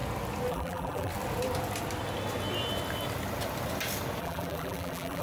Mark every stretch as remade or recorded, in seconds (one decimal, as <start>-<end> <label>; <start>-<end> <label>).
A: 0.0-0.5 recorded; 0.5-1.1 remade; 1.1-4.2 recorded; 4.2-5.2 remade